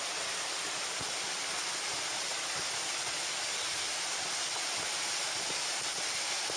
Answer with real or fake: real